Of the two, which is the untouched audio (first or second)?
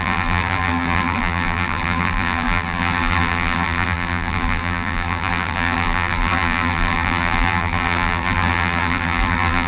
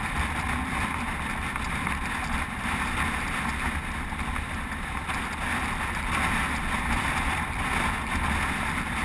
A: second